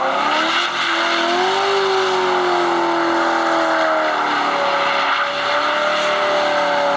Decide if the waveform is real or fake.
real